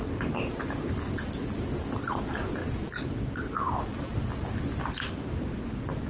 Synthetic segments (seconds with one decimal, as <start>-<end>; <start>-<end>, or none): none